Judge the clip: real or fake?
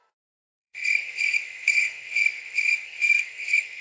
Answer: fake